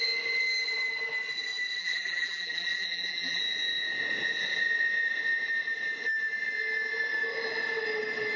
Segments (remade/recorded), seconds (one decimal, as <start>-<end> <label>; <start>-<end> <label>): 0.0-1.8 recorded; 1.8-3.4 remade; 3.4-8.4 recorded